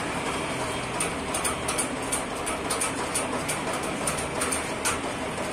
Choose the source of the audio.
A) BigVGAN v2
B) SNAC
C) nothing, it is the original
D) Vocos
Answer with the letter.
C